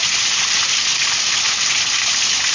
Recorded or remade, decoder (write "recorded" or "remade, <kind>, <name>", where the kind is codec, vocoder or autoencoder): recorded